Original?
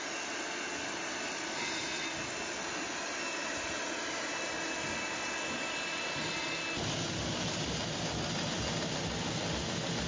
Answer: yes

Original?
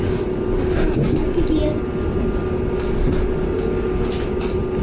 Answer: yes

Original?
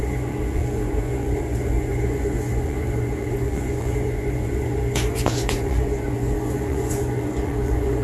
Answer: no